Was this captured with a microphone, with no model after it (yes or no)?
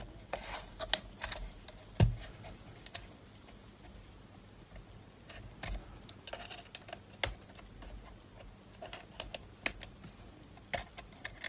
yes